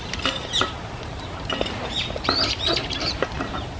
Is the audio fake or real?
fake